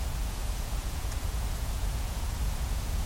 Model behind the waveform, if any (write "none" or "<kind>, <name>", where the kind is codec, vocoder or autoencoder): vocoder, Vocos